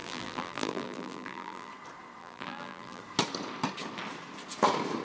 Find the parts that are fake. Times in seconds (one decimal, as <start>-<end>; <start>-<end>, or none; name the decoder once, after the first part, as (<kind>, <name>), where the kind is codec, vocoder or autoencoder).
0.0-1.7 (vocoder, BigVGAN v2); 2.2-3.0

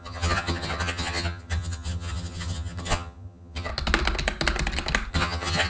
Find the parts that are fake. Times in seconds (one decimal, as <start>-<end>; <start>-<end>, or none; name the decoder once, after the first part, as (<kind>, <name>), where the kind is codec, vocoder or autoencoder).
0.0-3.7 (vocoder, HiFi-GAN); 5.1-5.7

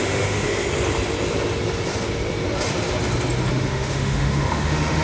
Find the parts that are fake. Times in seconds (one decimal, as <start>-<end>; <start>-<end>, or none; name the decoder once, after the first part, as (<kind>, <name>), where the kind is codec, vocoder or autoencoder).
0.0-0.5 (autoencoder, DAC-VAE); 3.5-5.0

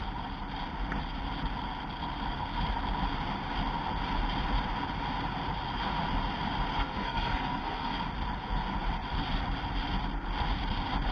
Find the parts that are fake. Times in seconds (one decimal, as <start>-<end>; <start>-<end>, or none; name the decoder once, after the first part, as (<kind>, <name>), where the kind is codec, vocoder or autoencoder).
6.7-7.9 (codec, SNAC)

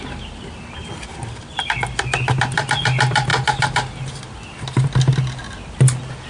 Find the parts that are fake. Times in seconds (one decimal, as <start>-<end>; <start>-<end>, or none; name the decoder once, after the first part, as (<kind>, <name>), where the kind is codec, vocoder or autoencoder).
none

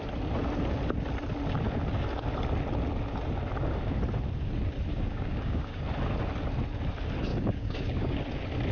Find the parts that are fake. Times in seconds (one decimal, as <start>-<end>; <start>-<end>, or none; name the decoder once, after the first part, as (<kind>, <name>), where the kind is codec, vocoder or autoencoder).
4.9-5.8 (codec, DAC); 7.3-8.2